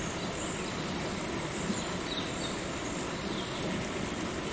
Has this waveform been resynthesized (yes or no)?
no